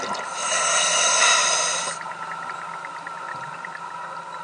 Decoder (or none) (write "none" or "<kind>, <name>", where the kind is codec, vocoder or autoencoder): none